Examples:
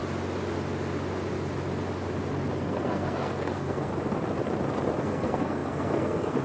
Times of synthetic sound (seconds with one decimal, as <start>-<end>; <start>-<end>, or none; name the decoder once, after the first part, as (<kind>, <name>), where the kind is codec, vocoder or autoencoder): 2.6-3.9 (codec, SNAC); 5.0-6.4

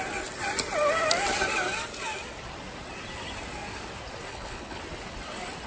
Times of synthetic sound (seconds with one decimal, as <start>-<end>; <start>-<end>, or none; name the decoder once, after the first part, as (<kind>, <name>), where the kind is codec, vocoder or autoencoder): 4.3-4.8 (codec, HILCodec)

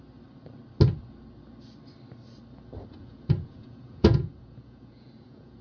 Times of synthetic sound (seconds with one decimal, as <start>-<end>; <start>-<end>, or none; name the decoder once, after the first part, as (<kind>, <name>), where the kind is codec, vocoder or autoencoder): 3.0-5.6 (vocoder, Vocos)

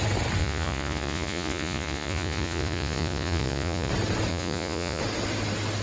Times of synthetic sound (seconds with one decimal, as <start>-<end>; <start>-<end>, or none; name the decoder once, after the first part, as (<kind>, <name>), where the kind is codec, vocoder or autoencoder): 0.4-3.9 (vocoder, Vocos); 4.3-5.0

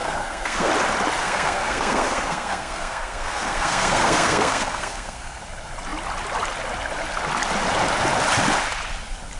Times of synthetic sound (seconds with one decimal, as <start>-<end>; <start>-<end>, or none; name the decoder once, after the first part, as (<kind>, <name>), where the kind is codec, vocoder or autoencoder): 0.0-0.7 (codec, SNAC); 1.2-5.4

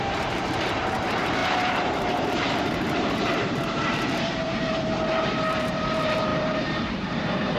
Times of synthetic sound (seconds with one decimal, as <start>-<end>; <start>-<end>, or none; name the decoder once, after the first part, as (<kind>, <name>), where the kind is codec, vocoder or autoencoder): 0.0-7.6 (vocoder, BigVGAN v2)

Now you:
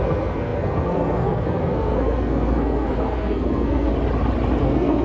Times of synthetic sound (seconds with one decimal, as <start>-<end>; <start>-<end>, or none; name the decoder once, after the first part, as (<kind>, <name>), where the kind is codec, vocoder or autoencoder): 0.0-3.9 (codec, SNAC); 4.6-5.0

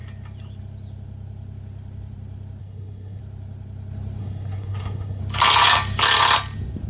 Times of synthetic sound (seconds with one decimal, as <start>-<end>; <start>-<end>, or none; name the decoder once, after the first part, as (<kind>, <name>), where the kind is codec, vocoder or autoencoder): 2.6-3.2 (codec, SNAC); 4.2-5.2